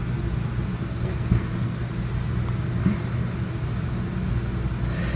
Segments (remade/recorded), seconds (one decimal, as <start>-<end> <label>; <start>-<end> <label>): 0.0-0.8 recorded; 0.8-1.8 remade; 1.8-5.2 recorded